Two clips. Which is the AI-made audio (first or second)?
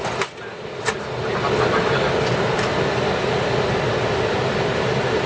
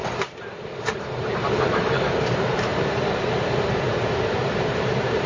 second